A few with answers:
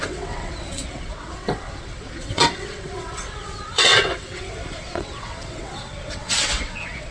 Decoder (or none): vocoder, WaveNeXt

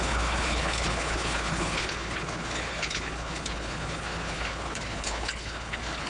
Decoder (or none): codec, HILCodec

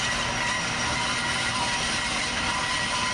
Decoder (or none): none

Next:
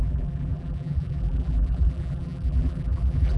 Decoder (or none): vocoder, BigVGAN v2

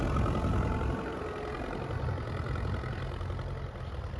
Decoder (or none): none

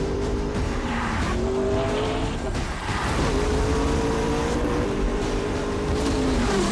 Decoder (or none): vocoder, BigVGAN v2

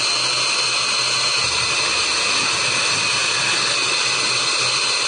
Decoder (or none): none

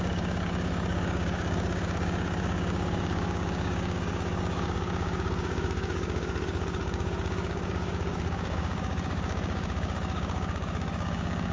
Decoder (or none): codec, DAC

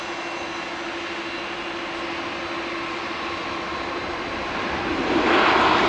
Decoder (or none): none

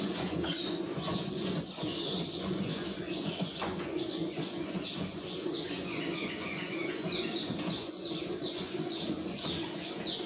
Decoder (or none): vocoder, Vocos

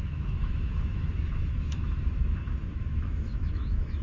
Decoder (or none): autoencoder, DAC-VAE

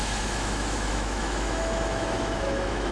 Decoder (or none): autoencoder, DAC-VAE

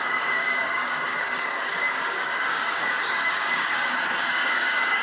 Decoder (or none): codec, DAC